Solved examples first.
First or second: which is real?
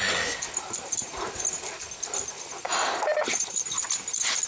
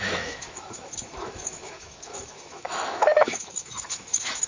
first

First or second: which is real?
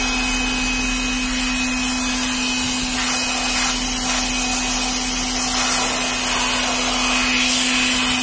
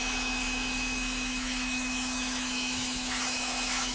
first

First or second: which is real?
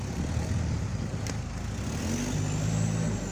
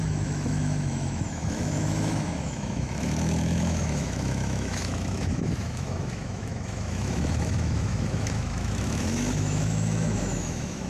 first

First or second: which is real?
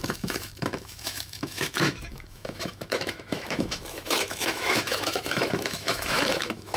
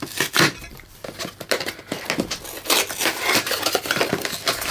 second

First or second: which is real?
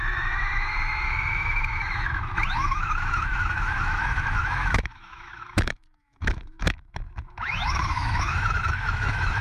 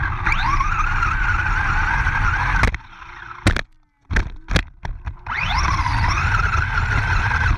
second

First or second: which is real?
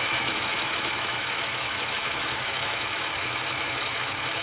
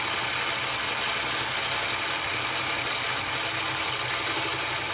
second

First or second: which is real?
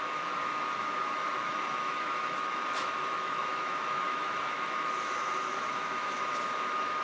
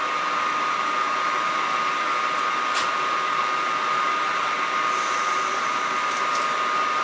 second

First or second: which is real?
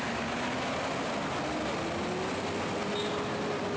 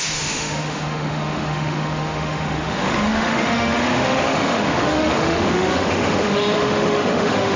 first